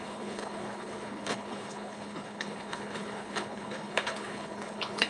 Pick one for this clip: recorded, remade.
remade